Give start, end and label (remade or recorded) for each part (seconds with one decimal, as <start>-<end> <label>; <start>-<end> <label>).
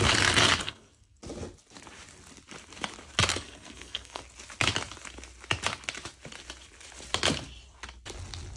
0.0-0.6 recorded; 0.6-1.2 remade; 1.2-3.3 recorded; 3.3-4.2 remade; 4.2-8.6 recorded